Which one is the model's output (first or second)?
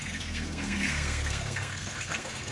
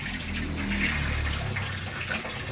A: first